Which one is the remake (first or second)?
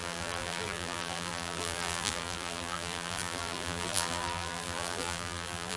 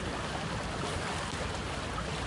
first